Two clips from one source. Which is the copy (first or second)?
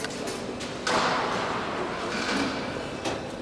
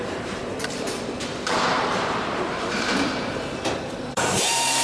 second